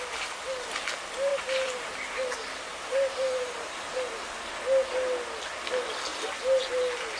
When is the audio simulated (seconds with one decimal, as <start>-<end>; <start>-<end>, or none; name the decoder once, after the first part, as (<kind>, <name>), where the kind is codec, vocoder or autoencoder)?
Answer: 1.3-1.9 (vocoder, BigVGAN v2); 2.7-4.4